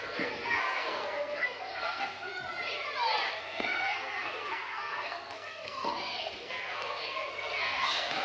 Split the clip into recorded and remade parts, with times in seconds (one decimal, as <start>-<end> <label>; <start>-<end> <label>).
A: 0.0-2.3 remade; 2.3-3.3 recorded; 3.3-8.2 remade